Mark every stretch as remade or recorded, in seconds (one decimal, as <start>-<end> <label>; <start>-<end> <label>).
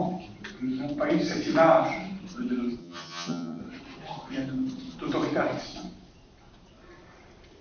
0.0-2.8 recorded; 2.8-3.6 remade; 3.6-7.6 recorded